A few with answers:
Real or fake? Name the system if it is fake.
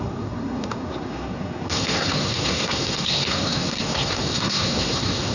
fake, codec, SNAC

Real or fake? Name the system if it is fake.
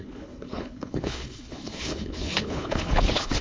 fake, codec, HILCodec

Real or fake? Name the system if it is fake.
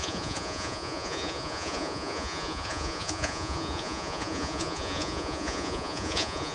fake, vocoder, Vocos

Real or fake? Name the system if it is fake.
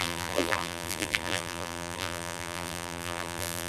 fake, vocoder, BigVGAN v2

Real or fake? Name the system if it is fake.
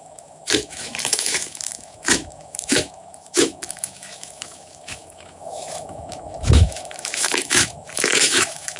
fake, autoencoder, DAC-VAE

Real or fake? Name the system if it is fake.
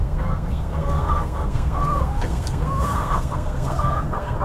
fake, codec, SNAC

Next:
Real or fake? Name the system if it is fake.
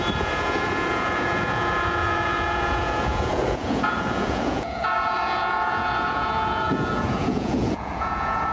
fake, vocoder, Vocos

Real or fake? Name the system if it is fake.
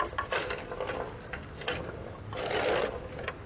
real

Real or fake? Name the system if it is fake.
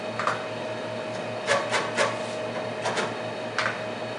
real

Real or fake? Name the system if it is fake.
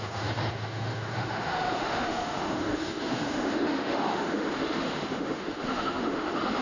fake, autoencoder, DAC-VAE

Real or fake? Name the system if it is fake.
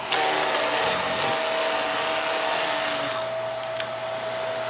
real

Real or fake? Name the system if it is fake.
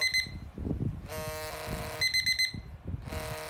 real